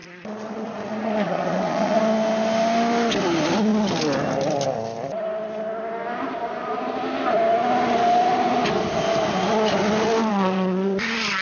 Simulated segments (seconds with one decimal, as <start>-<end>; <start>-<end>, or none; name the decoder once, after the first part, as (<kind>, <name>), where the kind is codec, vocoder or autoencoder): 0.0-2.0 (vocoder, Vocos); 10.3-11.0